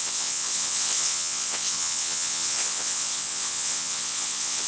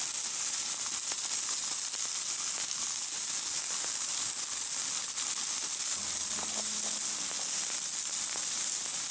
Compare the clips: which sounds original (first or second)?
second